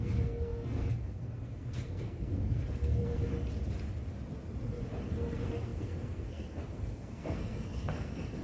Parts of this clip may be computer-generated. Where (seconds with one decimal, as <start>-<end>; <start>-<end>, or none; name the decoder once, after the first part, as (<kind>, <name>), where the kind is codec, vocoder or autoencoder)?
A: 0.0-3.2 (codec, SNAC); 5.1-8.4